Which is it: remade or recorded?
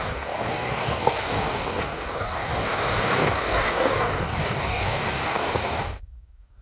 remade